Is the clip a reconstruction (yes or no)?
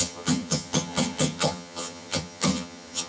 yes